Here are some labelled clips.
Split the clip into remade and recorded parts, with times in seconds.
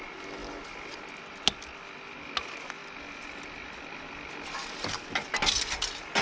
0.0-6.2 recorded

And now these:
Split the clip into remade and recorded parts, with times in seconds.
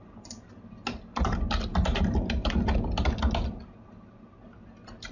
0.0-5.1 recorded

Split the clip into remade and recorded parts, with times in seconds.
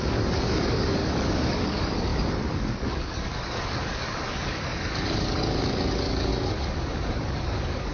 0.0-6.3 remade; 6.3-7.1 recorded; 7.1-7.9 remade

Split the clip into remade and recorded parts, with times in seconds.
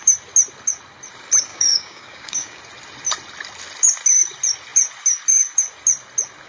0.0-1.5 recorded; 1.5-2.6 remade; 2.6-6.5 recorded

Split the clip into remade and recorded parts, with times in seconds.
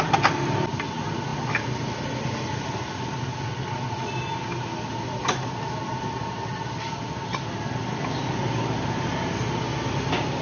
0.0-10.4 recorded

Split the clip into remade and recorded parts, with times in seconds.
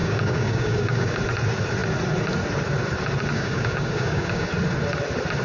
0.0-1.2 remade; 1.2-3.3 recorded; 3.3-4.5 remade; 4.5-5.4 recorded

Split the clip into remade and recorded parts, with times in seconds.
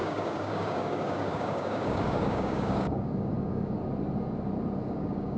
0.0-3.8 remade; 3.8-4.8 recorded; 4.8-5.4 remade